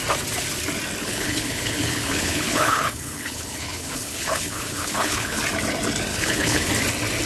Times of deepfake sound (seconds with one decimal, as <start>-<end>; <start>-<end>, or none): 1.0-5.4; 6.1-6.7